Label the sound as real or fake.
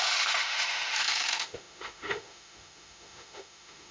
fake